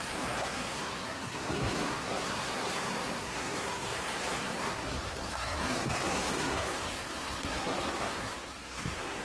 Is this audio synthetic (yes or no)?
yes